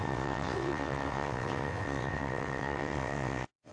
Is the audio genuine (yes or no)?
no